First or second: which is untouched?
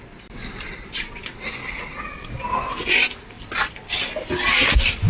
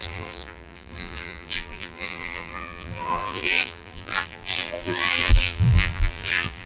first